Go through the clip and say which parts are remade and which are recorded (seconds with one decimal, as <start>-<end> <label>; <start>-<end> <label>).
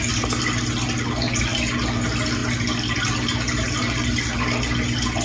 0.0-5.2 recorded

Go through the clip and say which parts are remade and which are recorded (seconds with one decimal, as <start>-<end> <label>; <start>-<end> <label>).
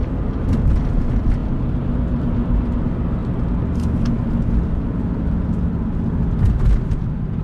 0.0-7.4 recorded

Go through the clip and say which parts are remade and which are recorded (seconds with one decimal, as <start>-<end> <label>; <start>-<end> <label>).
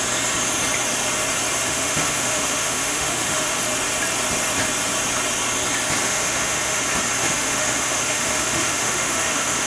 0.0-1.6 recorded; 1.6-3.6 remade; 3.6-6.0 recorded; 6.0-6.8 remade; 6.8-7.2 recorded; 7.2-9.7 remade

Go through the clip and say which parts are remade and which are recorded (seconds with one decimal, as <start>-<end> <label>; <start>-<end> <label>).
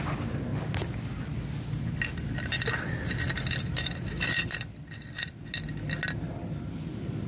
0.0-7.3 recorded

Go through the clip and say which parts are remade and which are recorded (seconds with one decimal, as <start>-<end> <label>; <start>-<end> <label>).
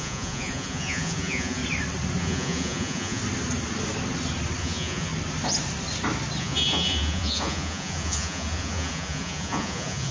0.0-1.6 remade; 1.6-2.2 recorded; 2.2-3.2 remade; 3.2-4.6 recorded; 4.6-5.1 remade; 5.1-6.4 recorded; 6.4-10.1 remade